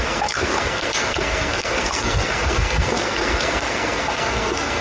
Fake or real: fake